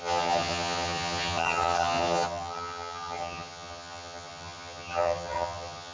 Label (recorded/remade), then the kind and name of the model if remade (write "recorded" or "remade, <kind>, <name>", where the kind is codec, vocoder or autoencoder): remade, vocoder, HiFi-GAN